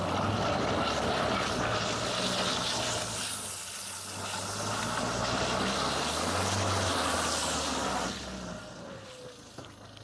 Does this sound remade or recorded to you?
recorded